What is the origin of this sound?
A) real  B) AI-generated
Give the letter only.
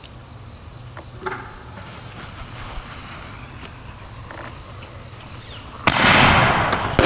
A